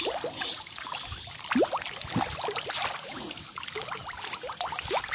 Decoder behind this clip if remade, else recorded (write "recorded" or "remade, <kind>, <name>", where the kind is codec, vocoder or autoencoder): recorded